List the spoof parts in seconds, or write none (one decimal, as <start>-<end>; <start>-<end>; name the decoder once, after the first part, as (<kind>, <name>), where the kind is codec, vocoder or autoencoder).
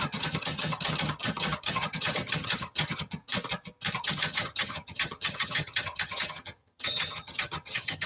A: 0.0-3.2 (vocoder, HiFi-GAN); 4.0-8.1